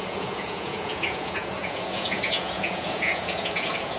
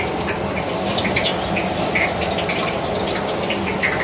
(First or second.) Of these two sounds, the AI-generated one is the first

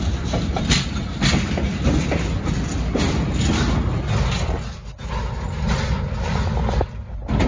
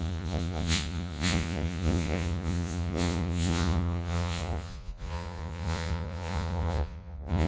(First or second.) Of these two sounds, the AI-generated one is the second